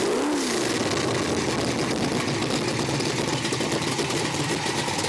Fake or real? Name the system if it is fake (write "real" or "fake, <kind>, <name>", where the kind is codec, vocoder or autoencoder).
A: real